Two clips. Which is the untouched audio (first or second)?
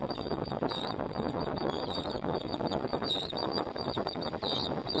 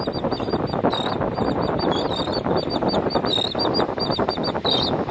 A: second